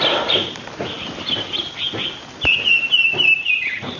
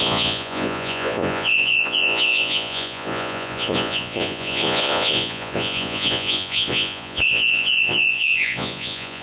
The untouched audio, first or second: first